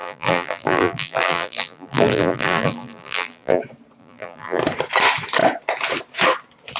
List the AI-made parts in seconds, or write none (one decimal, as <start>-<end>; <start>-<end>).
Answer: 0.0-3.6; 4.0-4.6